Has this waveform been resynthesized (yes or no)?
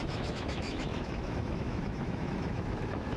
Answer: yes